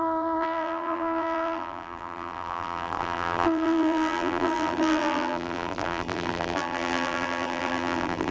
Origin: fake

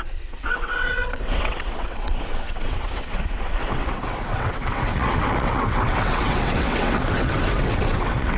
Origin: fake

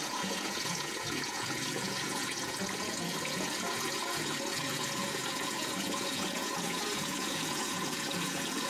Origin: fake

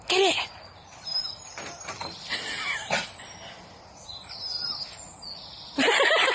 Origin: real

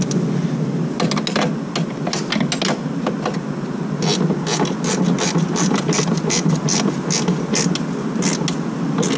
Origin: real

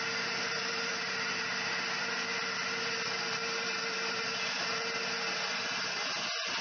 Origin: real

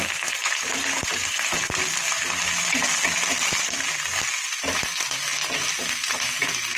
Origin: real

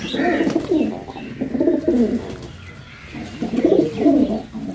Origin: real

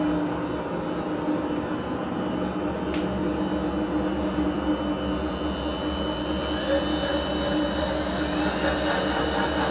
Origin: real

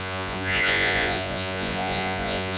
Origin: fake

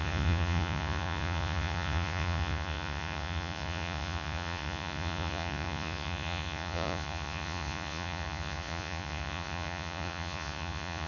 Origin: fake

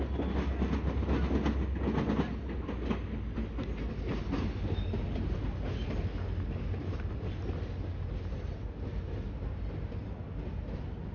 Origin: real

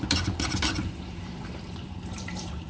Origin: fake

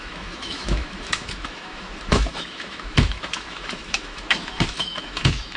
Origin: fake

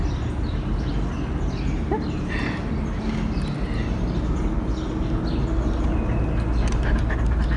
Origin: real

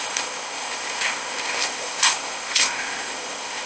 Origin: fake